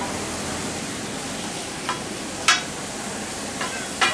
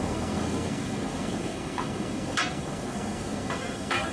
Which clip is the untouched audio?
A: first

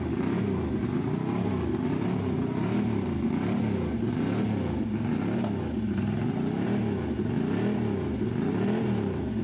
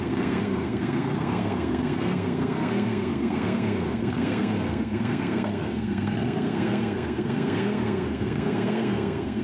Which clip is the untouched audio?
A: first